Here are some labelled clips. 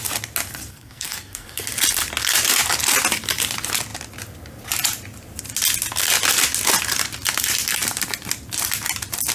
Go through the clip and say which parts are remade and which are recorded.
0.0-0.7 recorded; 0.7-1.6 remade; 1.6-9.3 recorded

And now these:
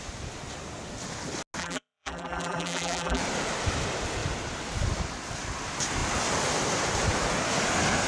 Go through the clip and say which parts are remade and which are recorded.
0.0-1.6 recorded; 1.6-3.2 remade; 3.2-8.1 recorded

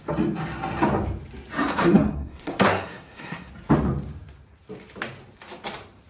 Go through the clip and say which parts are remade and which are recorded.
0.0-1.7 recorded; 1.7-3.5 remade; 3.5-6.1 recorded

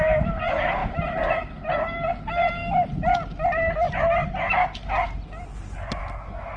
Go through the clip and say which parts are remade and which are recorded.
0.0-6.6 recorded

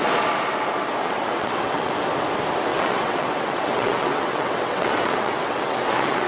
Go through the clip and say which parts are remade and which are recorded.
0.0-1.0 recorded; 1.0-1.9 remade; 1.9-2.7 recorded; 2.7-6.3 remade

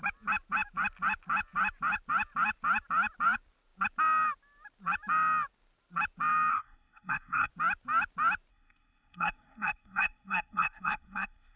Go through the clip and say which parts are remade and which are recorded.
0.0-6.5 recorded; 6.5-7.5 remade; 7.5-8.5 recorded; 8.5-11.6 remade

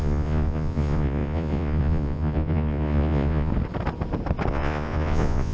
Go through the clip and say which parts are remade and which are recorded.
0.0-3.5 remade; 3.5-4.5 recorded; 4.5-5.5 remade